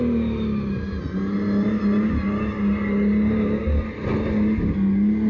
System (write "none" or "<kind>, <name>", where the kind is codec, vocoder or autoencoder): none